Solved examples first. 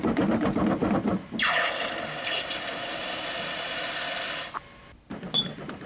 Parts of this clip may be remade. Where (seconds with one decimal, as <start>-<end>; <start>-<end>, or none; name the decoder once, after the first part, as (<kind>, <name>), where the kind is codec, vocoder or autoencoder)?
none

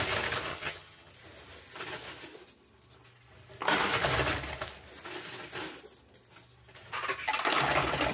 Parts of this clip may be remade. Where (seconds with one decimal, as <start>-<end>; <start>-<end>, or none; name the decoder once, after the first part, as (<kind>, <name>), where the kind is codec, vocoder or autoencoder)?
0.5-1.1 (vocoder, HiFi-GAN)

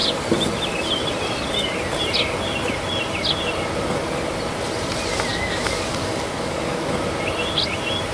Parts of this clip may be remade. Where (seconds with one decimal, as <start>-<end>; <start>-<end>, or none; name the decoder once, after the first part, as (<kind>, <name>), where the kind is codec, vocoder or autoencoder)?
5.3-6.9 (codec, DAC)

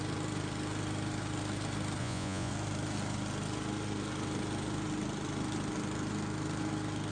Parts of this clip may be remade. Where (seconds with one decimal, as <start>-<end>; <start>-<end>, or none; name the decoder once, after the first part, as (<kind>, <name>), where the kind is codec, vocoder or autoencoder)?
2.0-2.5 (vocoder, Vocos)

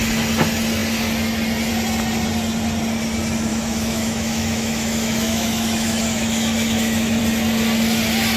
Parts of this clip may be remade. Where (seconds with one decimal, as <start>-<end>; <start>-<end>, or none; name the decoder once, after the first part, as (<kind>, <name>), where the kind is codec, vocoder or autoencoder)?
3.5-7.2 (autoencoder, DAC-VAE)

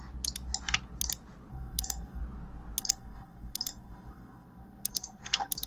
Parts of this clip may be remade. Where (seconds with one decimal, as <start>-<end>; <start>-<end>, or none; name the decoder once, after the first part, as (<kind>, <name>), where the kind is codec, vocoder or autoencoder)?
1.5-2.2 (codec, SNAC); 2.8-5.7

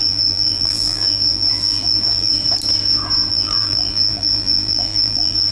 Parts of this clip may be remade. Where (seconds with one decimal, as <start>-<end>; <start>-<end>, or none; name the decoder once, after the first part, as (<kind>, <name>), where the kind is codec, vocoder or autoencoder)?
0.0-2.3 (vocoder, BigVGAN v2); 3.3-5.5